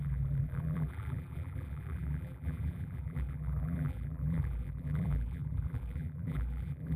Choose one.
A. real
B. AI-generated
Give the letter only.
B